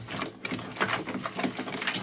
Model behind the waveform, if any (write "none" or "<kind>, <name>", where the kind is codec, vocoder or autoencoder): none